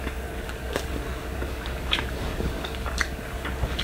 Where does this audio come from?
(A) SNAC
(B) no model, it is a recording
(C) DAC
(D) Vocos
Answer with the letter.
C